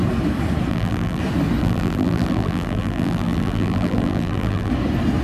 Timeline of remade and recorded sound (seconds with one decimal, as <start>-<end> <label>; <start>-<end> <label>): 0.0-0.7 recorded; 0.7-1.2 remade; 1.2-1.6 recorded; 1.6-4.7 remade; 4.7-5.2 recorded